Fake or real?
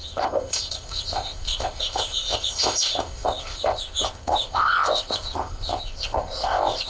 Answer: fake